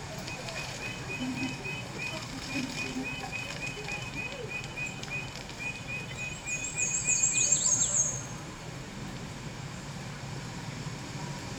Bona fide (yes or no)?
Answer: no